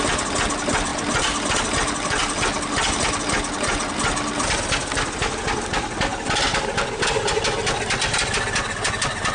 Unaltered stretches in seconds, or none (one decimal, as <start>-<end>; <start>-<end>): 0.0-9.3